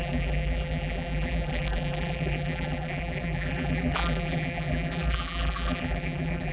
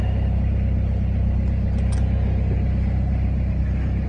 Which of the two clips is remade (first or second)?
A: first